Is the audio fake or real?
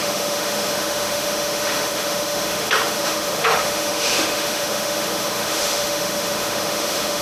fake